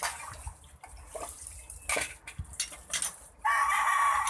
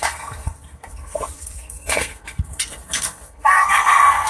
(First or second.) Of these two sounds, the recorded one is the first